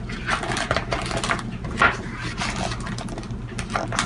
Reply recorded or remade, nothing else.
recorded